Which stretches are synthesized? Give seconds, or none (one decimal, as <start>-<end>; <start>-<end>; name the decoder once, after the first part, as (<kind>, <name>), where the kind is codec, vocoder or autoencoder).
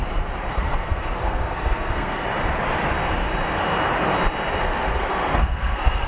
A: 0.5-2.2 (codec, SNAC); 4.6-6.1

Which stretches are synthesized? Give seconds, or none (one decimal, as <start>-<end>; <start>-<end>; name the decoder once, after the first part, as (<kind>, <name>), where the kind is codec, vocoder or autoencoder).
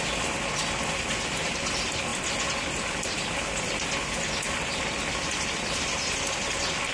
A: none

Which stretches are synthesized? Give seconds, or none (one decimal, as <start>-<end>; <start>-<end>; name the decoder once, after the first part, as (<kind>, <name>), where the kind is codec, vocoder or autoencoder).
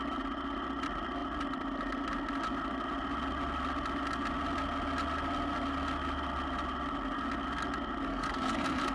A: 8.1-8.9 (codec, SNAC)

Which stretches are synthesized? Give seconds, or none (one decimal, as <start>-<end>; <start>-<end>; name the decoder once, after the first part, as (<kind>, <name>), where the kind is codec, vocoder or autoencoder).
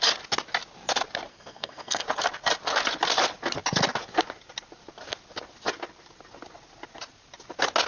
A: 1.3-2.0 (codec, SNAC)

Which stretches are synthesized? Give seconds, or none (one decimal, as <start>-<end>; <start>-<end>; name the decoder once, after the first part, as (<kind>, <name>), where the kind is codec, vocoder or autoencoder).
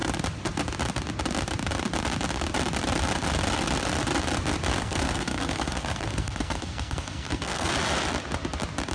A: 4.8-7.7 (codec, SNAC)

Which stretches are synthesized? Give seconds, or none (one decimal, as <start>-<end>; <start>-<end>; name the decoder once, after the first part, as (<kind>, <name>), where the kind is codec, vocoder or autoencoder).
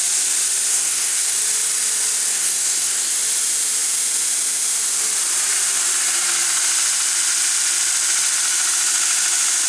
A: 0.7-1.3 (codec, SNAC); 2.3-3.1